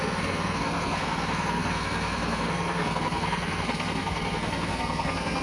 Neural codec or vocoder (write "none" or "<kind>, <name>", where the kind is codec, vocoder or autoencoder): codec, SNAC